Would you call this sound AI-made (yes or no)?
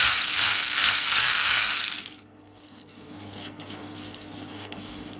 yes